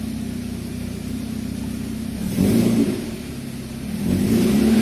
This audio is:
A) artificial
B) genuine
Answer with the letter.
A